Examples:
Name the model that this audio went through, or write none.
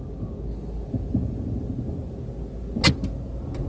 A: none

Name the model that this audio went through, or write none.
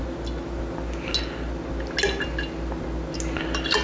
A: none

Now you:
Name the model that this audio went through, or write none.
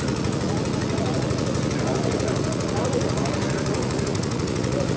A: vocoder, Vocos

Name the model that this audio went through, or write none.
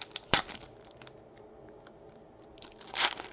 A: none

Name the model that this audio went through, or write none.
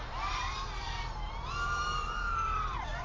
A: vocoder, BigVGAN v2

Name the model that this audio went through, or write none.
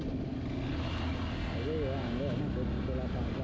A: none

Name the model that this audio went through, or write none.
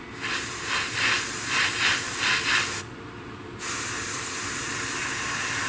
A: none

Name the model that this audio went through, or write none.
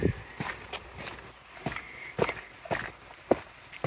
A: none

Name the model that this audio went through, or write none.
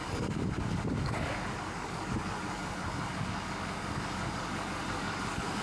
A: codec, DAC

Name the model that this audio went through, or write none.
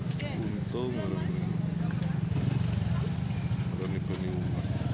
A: none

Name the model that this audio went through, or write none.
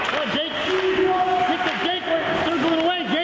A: none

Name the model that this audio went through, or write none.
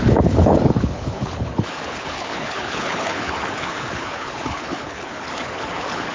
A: codec, HILCodec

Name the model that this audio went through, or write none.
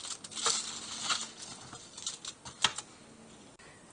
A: none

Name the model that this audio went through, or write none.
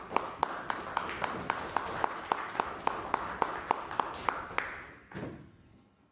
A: none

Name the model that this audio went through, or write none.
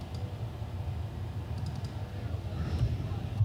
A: none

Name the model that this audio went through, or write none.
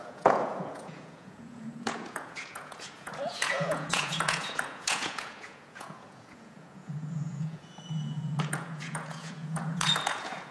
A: vocoder, Vocos